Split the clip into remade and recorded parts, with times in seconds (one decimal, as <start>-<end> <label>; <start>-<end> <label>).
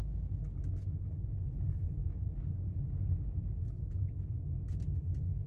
0.0-5.5 recorded